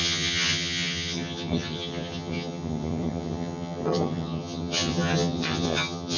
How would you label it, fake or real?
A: fake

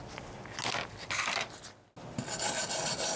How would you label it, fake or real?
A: real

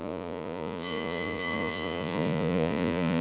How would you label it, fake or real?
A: fake